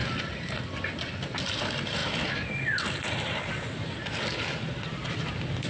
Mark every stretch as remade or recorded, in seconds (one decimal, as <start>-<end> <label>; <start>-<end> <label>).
0.0-5.7 recorded